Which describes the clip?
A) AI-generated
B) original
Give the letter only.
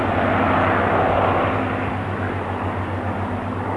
B